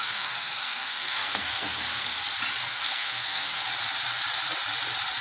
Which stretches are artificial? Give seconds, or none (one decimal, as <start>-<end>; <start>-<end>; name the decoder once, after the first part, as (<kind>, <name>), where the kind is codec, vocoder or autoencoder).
0.0-2.1 (codec, SNAC); 2.7-3.7